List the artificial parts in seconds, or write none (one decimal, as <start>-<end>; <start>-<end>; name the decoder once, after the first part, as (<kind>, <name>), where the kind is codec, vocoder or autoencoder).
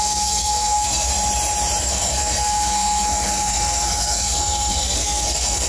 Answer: 0.0-1.1 (codec, SNAC); 1.8-5.7